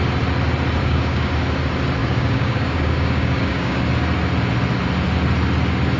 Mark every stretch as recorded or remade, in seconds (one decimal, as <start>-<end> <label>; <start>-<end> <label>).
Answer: 0.0-0.8 recorded; 0.8-1.3 remade; 1.3-2.0 recorded; 2.0-3.8 remade; 3.8-6.0 recorded